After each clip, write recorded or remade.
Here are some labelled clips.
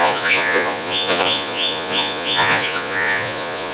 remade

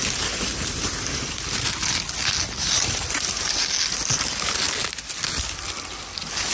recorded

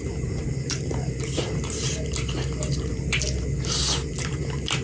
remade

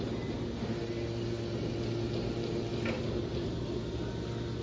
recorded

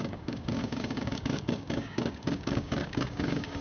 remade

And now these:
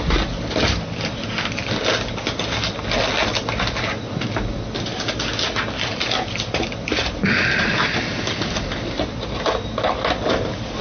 recorded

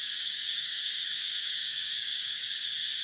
remade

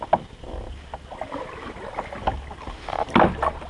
recorded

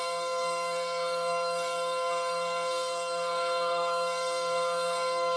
remade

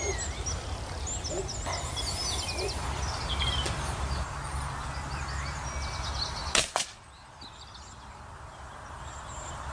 recorded